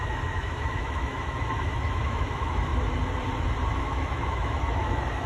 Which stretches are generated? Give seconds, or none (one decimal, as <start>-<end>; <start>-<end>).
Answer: 0.0-2.7; 3.8-5.3

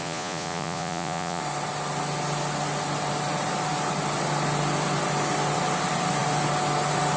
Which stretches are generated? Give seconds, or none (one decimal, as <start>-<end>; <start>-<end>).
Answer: 0.0-1.4

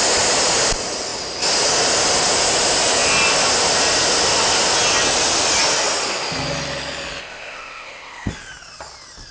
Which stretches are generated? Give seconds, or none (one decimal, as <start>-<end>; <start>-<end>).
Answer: 7.2-8.3

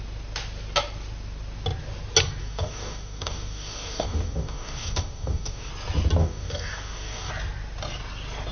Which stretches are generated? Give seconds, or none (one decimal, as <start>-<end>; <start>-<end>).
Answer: 2.4-5.7; 6.2-7.3

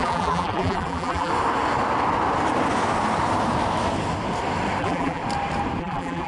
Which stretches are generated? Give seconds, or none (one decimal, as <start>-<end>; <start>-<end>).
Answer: 0.0-1.3; 4.8-5.2; 5.8-6.3

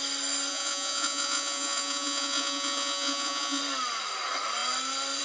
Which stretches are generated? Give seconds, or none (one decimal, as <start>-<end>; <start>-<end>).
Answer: 0.5-3.6

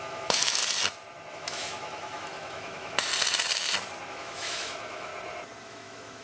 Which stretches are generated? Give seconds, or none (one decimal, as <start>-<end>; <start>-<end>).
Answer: 0.0-0.6; 1.3-3.1; 4.1-5.1; 5.6-6.2

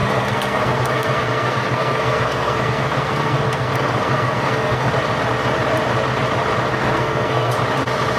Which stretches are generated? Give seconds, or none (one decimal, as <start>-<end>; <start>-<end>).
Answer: 0.0-4.9; 6.7-7.6